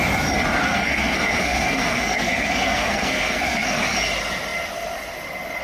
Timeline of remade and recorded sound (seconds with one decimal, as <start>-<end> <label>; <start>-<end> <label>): 0.0-0.6 recorded; 0.6-3.8 remade; 3.8-5.6 recorded